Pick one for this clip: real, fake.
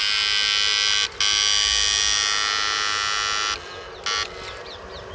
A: real